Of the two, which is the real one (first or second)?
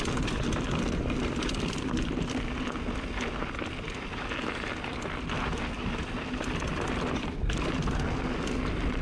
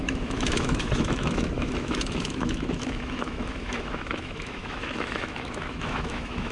first